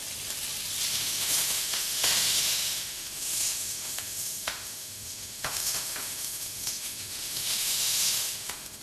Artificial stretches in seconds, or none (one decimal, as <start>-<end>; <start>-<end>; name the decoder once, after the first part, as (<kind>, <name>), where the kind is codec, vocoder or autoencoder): 0.9-8.8 (autoencoder, DAC-VAE)